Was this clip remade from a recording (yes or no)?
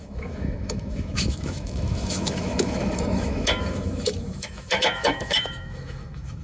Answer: yes